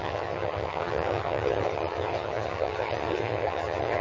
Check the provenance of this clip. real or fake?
fake